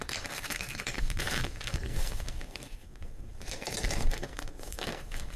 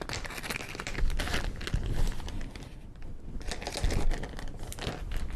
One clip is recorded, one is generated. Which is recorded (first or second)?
second